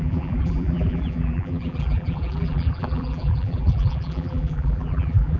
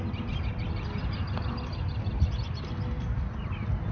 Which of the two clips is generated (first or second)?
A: first